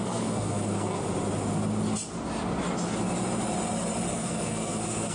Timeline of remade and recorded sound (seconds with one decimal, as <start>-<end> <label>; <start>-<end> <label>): 0.0-1.0 remade; 1.0-4.1 recorded; 4.1-5.1 remade